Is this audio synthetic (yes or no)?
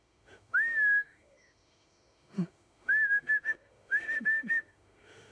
yes